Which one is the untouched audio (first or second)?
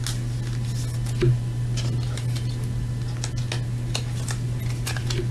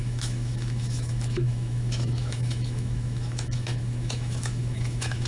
first